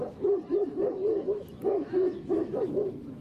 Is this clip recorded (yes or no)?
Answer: no